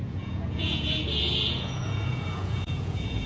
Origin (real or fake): fake